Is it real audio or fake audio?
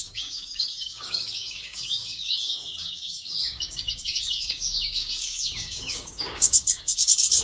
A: fake